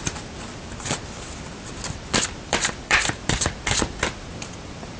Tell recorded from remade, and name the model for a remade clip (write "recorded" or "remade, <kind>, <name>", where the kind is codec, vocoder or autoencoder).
remade, vocoder, BigVGAN v2